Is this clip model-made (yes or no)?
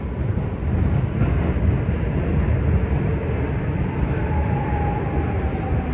no